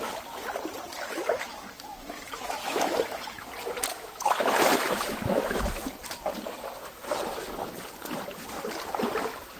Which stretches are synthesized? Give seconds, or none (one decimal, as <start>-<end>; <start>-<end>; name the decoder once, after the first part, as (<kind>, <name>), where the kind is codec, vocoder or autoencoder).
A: 1.1-3.5 (autoencoder, DAC-VAE); 3.9-5.6